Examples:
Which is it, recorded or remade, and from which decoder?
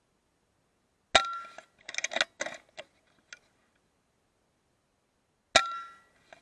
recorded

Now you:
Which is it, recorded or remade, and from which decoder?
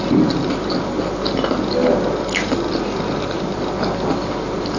recorded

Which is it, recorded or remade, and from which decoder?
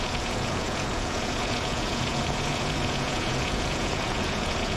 remade, vocoder, Vocos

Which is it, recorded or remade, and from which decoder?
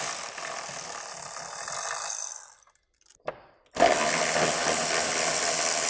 recorded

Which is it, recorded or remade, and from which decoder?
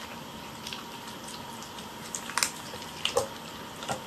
recorded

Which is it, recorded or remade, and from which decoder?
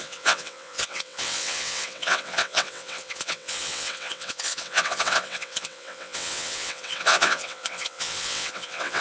remade, vocoder, WaveNeXt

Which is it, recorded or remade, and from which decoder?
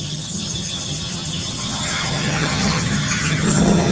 remade, vocoder, HiFi-GAN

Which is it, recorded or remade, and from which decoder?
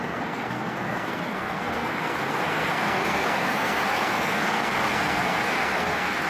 remade, codec, SNAC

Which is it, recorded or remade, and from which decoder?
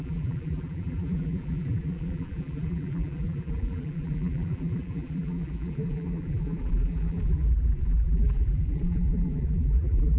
remade, vocoder, BigVGAN v2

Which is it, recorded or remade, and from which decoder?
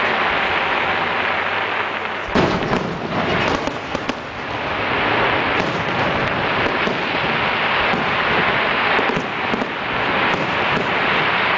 recorded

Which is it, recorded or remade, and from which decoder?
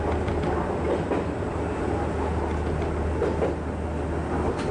recorded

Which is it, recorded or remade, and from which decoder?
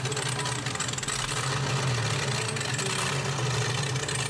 recorded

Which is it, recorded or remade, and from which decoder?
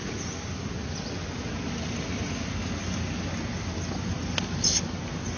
recorded